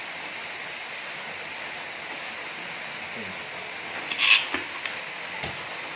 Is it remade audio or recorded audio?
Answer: recorded